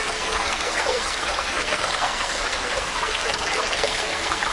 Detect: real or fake fake